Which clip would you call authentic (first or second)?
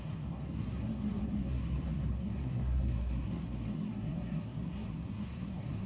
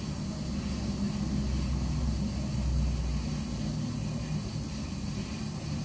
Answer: second